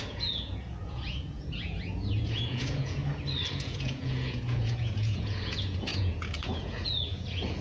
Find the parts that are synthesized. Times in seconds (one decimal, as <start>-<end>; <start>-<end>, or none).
0.0-3.0; 3.5-7.6